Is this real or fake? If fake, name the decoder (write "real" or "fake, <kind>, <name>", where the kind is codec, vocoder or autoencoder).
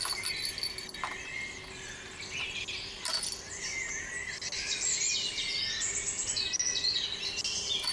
real